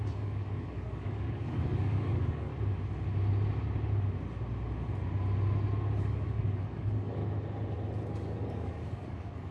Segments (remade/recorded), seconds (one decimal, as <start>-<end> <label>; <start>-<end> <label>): 0.0-2.5 remade; 2.5-6.0 recorded; 6.0-7.2 remade; 7.2-8.0 recorded; 8.0-9.5 remade